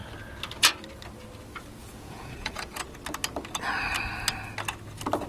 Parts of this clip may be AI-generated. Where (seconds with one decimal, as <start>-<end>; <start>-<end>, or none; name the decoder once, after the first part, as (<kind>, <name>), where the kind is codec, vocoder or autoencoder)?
1.8-2.8 (vocoder, Vocos)